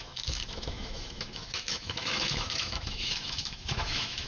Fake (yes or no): yes